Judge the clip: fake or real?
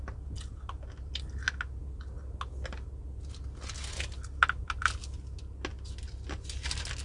real